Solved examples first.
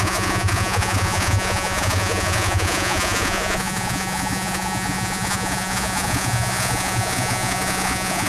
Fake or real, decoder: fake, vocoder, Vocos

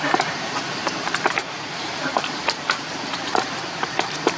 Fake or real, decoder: fake, vocoder, BigVGAN v2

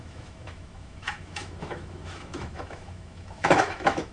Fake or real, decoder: fake, autoencoder, DAC-VAE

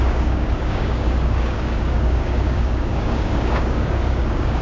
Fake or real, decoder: fake, codec, DAC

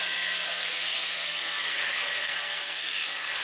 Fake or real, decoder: fake, codec, SNAC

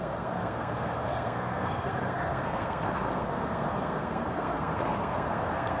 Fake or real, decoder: fake, codec, SNAC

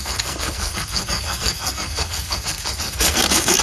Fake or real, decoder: fake, codec, SNAC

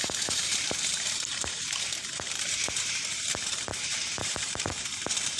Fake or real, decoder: fake, vocoder, BigVGAN v2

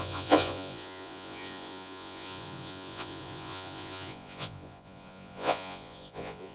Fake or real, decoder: fake, vocoder, Vocos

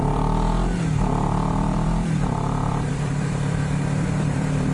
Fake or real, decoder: fake, vocoder, BigVGAN v2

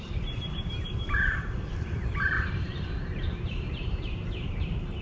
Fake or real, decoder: fake, vocoder, BigVGAN v2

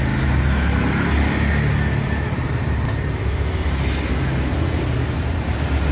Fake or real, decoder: real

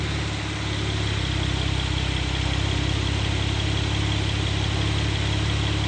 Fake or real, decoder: real